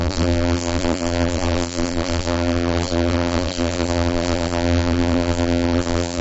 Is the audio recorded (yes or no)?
no